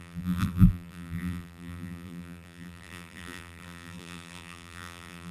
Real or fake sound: fake